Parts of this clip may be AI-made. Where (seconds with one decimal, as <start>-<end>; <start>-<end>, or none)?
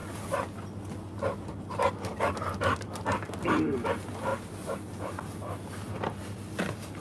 4.3-4.9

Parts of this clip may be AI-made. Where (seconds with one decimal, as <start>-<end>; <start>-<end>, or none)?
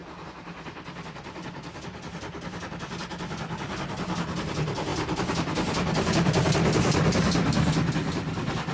none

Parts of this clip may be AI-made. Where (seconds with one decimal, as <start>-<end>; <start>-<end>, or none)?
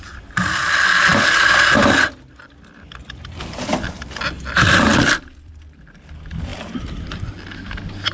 4.9-5.5; 6.5-7.6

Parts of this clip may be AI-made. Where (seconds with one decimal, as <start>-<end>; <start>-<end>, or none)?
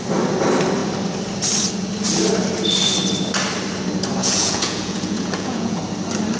4.2-5.8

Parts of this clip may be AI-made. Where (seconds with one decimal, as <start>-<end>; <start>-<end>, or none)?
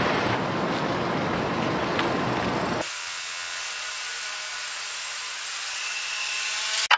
3.0-3.6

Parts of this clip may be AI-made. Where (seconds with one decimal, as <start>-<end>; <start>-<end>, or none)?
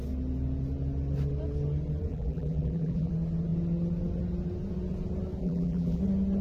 2.1-3.1; 5.4-6.0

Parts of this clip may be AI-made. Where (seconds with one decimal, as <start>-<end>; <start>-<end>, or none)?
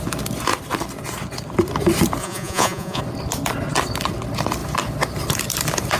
2.2-3.0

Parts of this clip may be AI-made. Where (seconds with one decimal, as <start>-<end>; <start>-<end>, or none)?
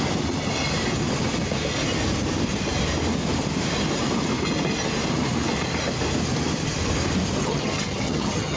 7.4-8.6